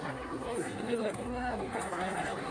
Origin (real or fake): fake